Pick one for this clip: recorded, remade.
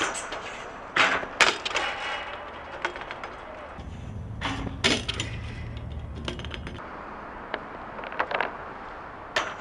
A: recorded